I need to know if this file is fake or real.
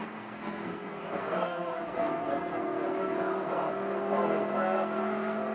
fake